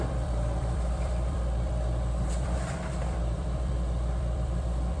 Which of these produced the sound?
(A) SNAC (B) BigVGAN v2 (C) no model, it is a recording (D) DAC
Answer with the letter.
B